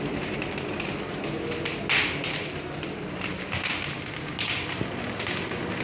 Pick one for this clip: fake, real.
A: real